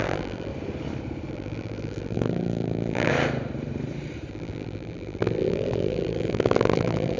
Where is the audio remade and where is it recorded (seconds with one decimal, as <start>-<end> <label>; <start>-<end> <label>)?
0.0-0.5 remade; 0.5-1.3 recorded; 1.3-3.1 remade; 3.1-4.3 recorded; 4.3-7.2 remade